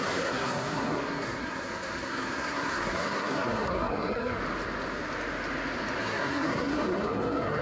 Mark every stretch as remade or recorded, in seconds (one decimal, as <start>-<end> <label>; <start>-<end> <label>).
0.0-4.4 remade; 4.4-6.0 recorded; 6.0-7.6 remade

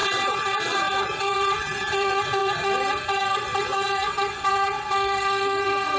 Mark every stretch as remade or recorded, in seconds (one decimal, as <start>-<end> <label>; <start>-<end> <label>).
0.0-6.0 remade